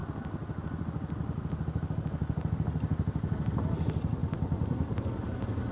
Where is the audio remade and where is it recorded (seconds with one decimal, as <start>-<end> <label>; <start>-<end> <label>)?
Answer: 0.0-4.2 recorded; 4.2-5.1 remade; 5.1-5.7 recorded